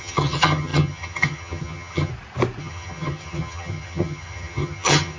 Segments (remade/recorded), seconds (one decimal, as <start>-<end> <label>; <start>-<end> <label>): 0.0-2.1 remade; 2.1-2.6 recorded; 2.6-5.2 remade